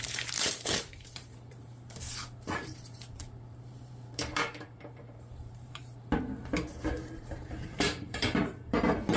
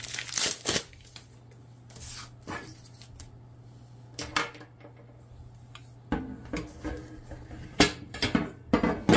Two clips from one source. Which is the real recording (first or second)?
second